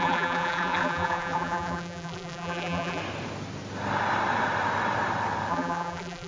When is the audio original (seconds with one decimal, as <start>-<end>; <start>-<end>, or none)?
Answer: 3.0-5.5